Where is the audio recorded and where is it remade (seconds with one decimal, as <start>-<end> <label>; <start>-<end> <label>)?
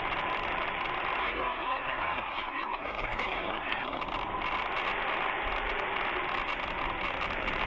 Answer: 0.0-1.2 recorded; 1.2-4.0 remade; 4.0-7.7 recorded